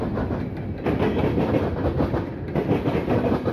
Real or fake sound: real